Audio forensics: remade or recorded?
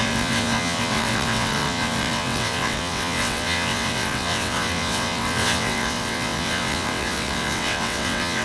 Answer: remade